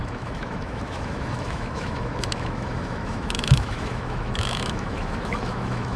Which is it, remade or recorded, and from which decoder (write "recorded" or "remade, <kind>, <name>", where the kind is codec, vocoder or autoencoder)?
remade, autoencoder, DAC-VAE